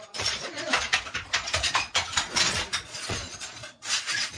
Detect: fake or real fake